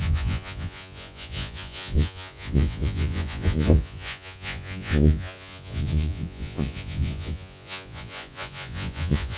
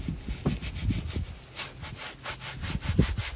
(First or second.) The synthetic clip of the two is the first